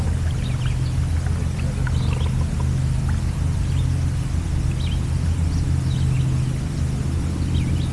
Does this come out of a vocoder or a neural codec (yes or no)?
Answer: no